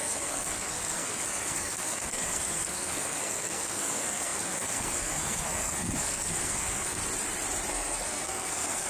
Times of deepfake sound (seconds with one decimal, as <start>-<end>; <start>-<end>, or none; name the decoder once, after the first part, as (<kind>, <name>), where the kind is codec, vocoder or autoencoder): 0.0-7.0 (codec, SNAC); 7.7-8.9